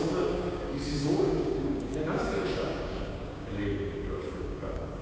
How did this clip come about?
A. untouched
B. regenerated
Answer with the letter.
B